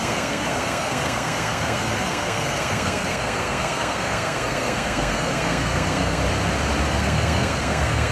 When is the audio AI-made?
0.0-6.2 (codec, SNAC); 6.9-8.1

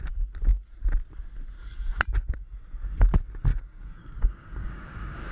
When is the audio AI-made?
3.5-5.3 (codec, DAC)

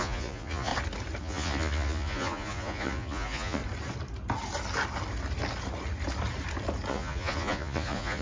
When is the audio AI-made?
0.0-0.7 (vocoder, Vocos); 1.2-3.6; 6.9-8.2

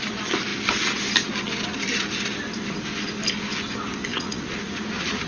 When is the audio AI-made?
4.1-5.3 (vocoder, Vocos)

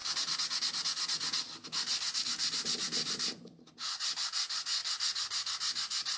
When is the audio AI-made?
none

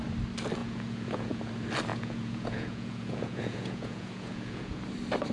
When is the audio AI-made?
0.6-1.4 (vocoder, Vocos); 1.9-4.8